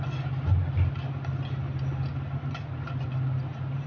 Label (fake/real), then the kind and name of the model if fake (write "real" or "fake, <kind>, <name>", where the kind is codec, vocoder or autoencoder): real